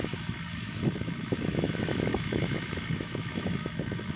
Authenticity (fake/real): fake